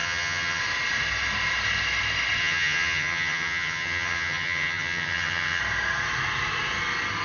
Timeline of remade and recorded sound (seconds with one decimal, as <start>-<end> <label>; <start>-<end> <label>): 0.0-0.6 remade; 0.6-2.4 recorded; 2.4-5.6 remade; 5.6-7.2 recorded